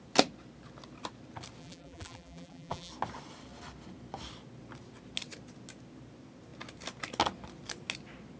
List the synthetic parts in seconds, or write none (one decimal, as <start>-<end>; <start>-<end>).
1.6-2.9